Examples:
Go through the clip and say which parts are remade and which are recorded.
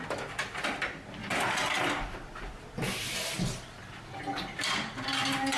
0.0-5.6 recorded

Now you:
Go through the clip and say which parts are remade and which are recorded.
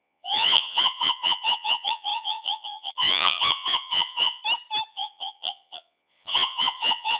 0.0-4.4 remade; 4.4-4.9 recorded; 4.9-7.2 remade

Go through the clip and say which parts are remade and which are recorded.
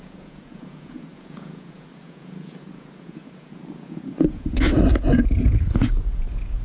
0.0-6.6 remade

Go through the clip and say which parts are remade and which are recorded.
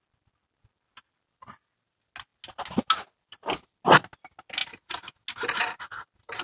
0.0-6.4 recorded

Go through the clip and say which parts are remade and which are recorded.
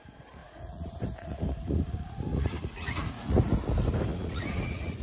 0.0-0.4 recorded; 0.4-3.4 remade; 3.4-4.1 recorded; 4.1-5.0 remade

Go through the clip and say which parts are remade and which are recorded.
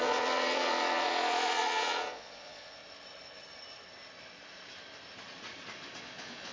0.0-2.8 remade; 2.8-6.0 recorded; 6.0-6.5 remade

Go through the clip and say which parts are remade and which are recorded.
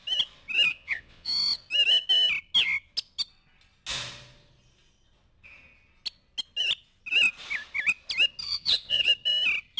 0.0-0.7 recorded; 0.7-1.3 remade; 1.3-8.4 recorded; 8.4-9.1 remade; 9.1-9.8 recorded